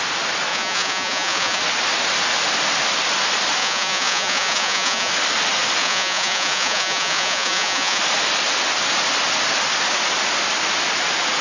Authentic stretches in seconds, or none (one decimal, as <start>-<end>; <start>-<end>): 0.0-0.5; 1.6-3.6; 5.1-5.8; 8.0-11.4